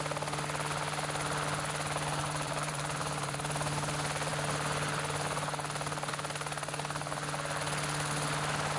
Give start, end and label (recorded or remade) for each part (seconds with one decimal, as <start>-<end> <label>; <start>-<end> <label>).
0.0-2.2 recorded; 2.2-3.4 remade; 3.4-8.8 recorded